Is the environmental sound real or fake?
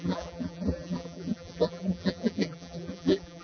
fake